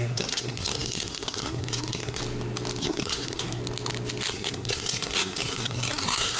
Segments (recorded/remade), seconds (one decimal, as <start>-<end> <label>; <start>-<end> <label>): 0.0-2.2 remade; 2.2-2.8 recorded; 2.8-3.6 remade; 3.6-4.3 recorded; 4.3-6.4 remade